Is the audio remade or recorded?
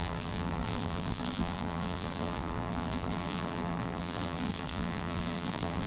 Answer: remade